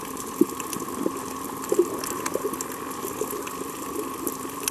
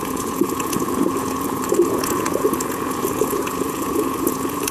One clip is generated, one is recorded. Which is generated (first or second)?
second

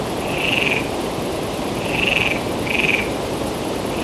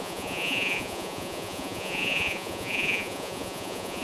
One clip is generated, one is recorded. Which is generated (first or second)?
second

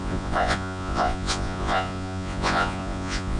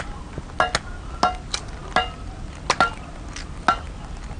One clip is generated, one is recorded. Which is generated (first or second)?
first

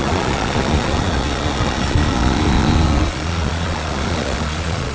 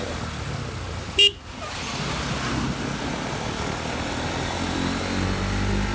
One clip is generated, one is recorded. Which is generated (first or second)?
first